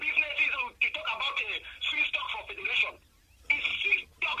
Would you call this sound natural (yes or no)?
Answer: no